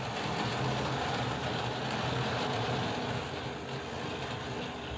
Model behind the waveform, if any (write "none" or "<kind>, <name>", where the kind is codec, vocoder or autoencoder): none